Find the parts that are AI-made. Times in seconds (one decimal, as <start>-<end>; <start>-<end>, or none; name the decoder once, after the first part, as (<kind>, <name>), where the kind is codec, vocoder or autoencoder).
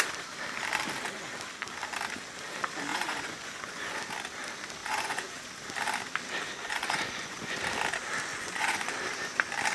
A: 2.9-4.0 (vocoder, Vocos); 4.8-5.5; 6.6-7.6; 8.3-8.9